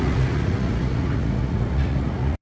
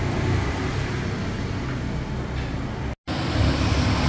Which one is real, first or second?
second